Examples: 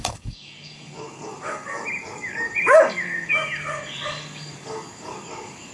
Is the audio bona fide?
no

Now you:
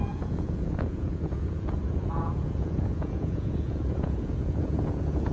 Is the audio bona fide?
no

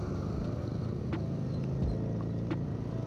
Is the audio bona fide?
yes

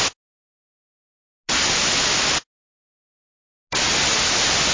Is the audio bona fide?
yes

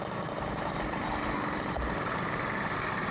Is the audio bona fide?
no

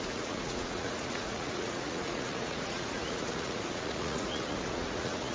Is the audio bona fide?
no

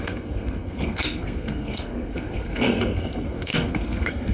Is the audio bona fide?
no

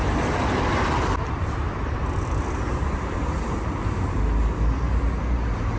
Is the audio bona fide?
yes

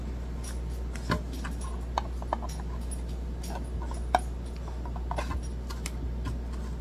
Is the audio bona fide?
yes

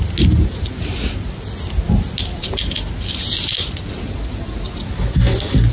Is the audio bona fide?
yes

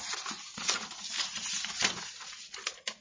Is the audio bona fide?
yes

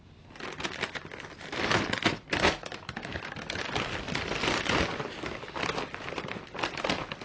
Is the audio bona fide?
yes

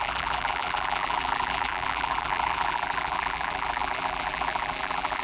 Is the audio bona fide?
no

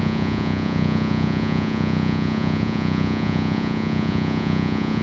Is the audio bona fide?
no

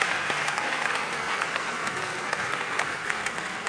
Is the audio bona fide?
no